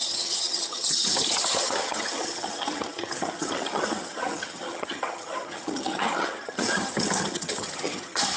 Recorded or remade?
remade